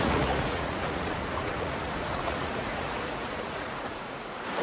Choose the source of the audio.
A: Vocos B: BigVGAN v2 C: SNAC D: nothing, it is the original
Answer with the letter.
A